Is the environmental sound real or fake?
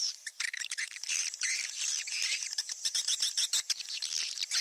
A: fake